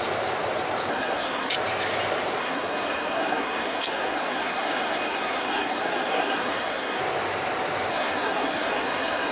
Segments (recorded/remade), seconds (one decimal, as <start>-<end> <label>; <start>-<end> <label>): 0.0-0.9 recorded; 0.9-1.5 remade; 1.5-2.4 recorded; 2.4-7.0 remade; 7.0-7.9 recorded; 7.9-9.3 remade